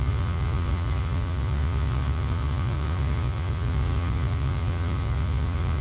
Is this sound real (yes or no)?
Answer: no